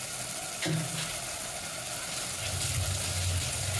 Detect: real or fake real